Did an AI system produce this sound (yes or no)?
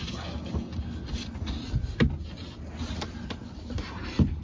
no